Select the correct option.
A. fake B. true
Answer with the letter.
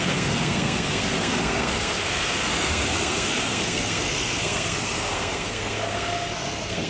A